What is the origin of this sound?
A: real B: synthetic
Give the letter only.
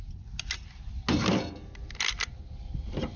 A